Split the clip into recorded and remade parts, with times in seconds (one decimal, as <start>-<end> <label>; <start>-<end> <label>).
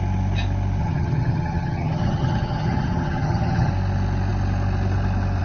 0.0-0.8 recorded; 0.8-3.7 remade; 3.7-5.4 recorded